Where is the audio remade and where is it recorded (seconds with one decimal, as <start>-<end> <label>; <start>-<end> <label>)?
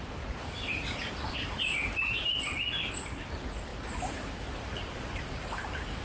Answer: 0.0-6.0 remade